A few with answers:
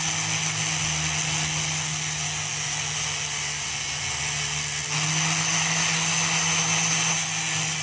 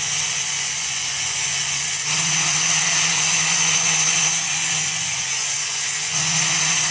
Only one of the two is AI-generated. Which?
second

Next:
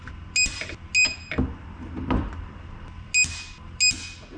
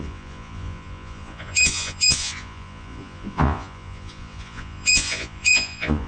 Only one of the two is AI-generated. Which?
second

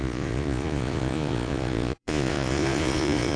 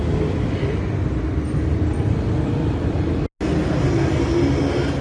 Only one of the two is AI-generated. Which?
first